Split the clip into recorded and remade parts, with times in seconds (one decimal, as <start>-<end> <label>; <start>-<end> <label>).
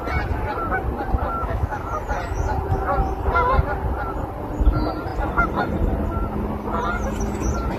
0.0-1.4 recorded; 1.4-1.9 remade; 1.9-7.8 recorded